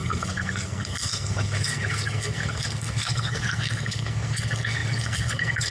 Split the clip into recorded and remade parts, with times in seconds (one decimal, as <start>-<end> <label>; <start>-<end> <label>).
0.0-5.7 remade